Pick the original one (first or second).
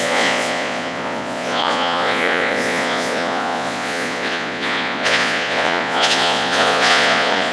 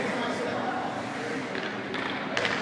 second